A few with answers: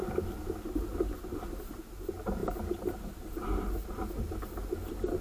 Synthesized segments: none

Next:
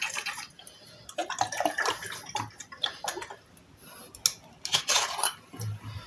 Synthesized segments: none